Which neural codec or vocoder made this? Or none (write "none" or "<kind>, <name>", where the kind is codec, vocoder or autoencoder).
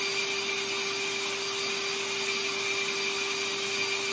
none